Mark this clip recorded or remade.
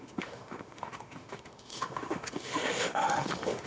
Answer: remade